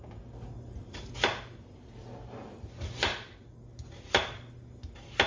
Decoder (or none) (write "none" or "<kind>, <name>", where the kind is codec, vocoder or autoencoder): none